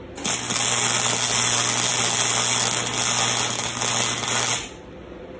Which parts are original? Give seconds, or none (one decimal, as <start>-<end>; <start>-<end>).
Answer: 0.0-5.4